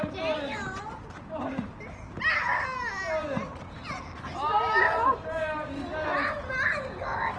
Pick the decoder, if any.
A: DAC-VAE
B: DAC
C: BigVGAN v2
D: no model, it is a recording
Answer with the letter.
D